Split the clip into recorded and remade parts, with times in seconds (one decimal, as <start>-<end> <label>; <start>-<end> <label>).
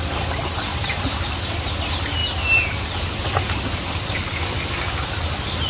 0.0-0.7 recorded; 0.7-1.7 remade; 1.7-5.7 recorded